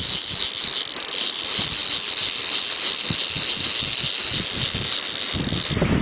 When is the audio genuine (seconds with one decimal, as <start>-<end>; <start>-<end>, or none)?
0.0-6.0

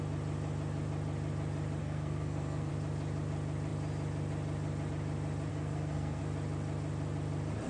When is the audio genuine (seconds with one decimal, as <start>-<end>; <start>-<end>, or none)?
0.0-1.8; 2.7-5.5; 6.2-7.7

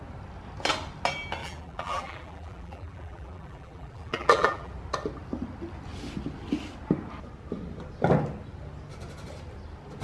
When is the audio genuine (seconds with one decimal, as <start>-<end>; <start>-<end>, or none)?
0.0-1.4; 4.7-10.0

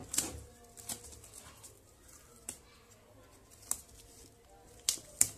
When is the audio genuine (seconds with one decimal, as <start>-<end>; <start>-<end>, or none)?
0.0-5.4